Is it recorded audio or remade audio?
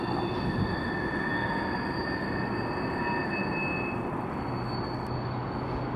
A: recorded